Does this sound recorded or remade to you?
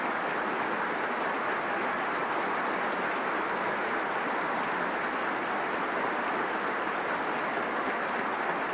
recorded